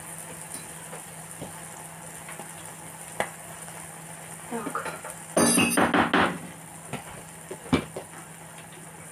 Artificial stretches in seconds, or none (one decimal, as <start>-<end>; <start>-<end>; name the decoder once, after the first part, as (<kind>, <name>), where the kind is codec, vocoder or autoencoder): none